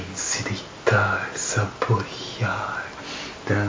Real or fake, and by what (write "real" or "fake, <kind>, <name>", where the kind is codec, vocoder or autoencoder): real